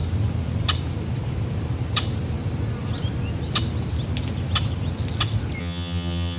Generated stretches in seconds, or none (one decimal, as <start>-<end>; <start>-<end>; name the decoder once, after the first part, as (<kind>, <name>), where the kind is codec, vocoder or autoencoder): 5.6-6.4 (vocoder, HiFi-GAN)